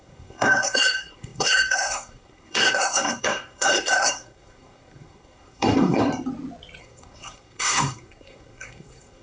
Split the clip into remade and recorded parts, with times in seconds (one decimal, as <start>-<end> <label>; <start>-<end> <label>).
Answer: 0.0-6.1 remade; 6.1-6.8 recorded; 6.8-9.2 remade